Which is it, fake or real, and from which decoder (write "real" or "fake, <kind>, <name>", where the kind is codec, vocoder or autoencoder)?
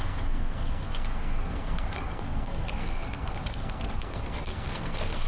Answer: fake, codec, SNAC